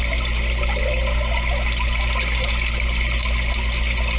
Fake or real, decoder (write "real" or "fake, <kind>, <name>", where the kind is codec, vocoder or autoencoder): real